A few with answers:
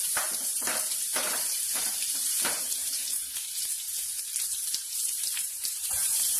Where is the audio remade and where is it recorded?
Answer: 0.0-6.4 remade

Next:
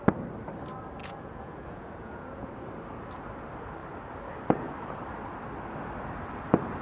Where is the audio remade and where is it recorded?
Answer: 0.0-1.0 recorded; 1.0-2.5 remade; 2.5-6.8 recorded

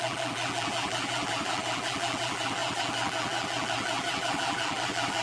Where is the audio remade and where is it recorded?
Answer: 0.0-5.2 remade

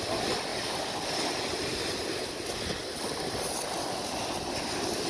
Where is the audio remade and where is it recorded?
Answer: 0.0-5.1 recorded

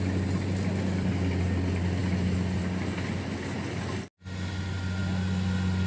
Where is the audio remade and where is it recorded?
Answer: 0.0-5.9 recorded

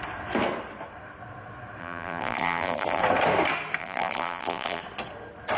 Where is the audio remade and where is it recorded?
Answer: 0.0-1.8 recorded; 1.8-3.0 remade; 3.0-3.8 recorded; 3.8-4.8 remade; 4.8-5.6 recorded

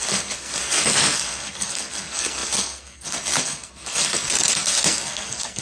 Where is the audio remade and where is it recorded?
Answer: 0.0-5.6 remade